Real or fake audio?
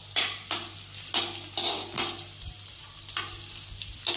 real